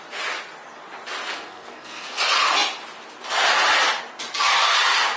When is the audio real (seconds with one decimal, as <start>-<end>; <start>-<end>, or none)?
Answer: 0.0-1.3; 2.2-5.2